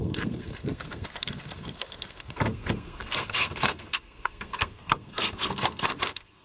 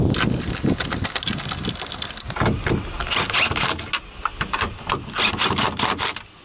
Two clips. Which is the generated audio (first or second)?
first